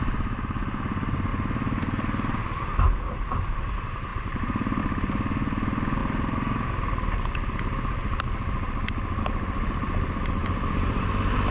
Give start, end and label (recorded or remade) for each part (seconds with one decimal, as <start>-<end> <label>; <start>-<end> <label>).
0.0-1.3 recorded; 1.3-2.4 remade; 2.4-4.1 recorded; 4.1-4.8 remade; 4.8-10.4 recorded; 10.4-11.1 remade; 11.1-11.5 recorded